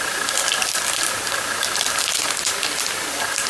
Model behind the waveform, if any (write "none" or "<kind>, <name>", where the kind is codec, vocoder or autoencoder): none